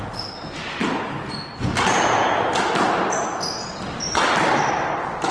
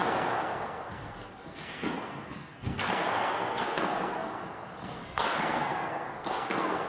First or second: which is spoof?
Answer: second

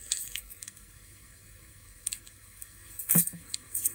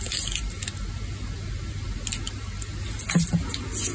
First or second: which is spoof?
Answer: first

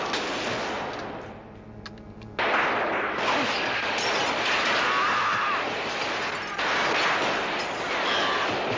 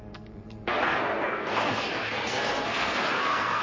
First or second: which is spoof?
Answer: second